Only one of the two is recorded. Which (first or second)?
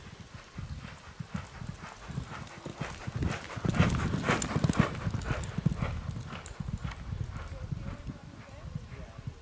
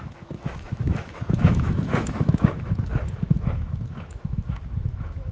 first